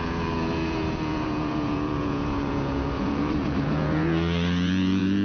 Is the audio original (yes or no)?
no